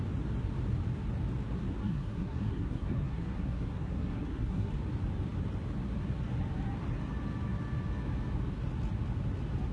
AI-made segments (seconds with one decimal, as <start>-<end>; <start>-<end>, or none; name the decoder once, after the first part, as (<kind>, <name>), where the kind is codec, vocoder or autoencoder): 1.8-4.7 (codec, SNAC)